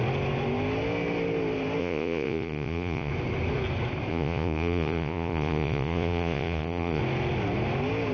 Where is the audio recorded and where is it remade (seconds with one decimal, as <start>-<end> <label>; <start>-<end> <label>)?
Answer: 0.0-1.8 recorded; 1.8-3.1 remade; 3.1-4.1 recorded; 4.1-7.0 remade; 7.0-8.1 recorded